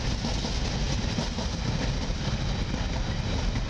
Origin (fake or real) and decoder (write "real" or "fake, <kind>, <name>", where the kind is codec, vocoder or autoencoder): real